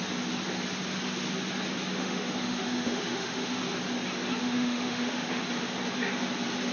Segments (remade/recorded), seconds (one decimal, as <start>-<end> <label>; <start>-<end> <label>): 0.0-1.9 recorded; 1.9-3.6 remade; 3.6-4.4 recorded; 4.4-5.4 remade; 5.4-6.7 recorded